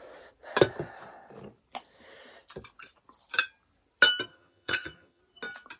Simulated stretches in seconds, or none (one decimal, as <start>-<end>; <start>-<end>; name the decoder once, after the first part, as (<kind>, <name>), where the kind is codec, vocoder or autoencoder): 4.3-5.2 (vocoder, HiFi-GAN)